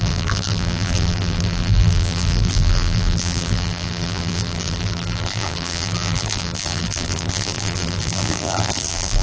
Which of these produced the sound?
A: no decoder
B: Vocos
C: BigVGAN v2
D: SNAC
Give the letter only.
C